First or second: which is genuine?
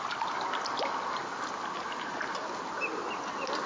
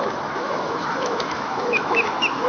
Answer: first